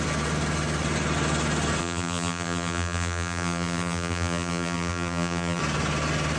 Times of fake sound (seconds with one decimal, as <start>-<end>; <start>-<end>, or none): 1.8-5.6